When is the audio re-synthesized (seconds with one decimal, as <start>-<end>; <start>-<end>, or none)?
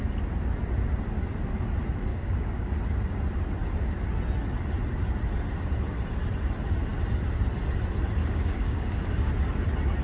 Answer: 2.1-2.7; 8.2-9.3